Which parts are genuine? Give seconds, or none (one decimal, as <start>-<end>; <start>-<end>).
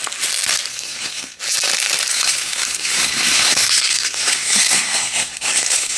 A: 0.0-0.7; 1.4-2.1